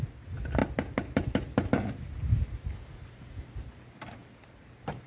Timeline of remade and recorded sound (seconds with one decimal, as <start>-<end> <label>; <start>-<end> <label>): 0.0-5.1 recorded